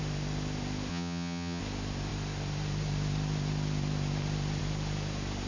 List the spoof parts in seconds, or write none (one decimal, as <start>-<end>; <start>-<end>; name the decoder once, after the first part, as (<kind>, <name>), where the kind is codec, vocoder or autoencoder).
0.9-1.6 (vocoder, HiFi-GAN)